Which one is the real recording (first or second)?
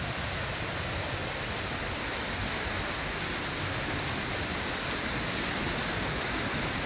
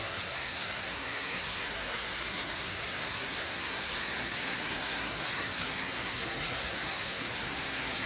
first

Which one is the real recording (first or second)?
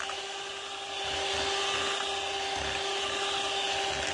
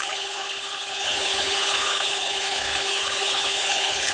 first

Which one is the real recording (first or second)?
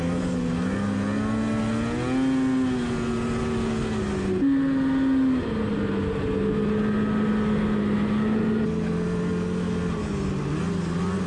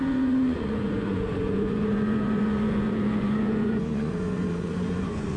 first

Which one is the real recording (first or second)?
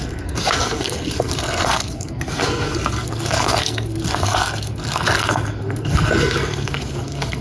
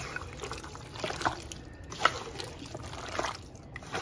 second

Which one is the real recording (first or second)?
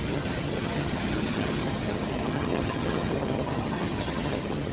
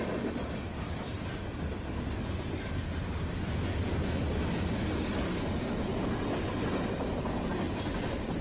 second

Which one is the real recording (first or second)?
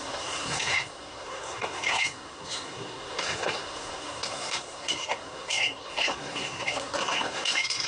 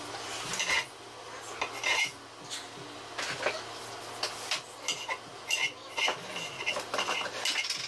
second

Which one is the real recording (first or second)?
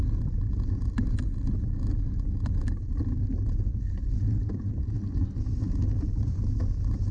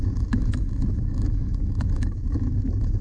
first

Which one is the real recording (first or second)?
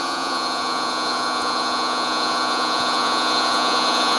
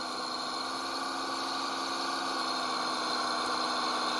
second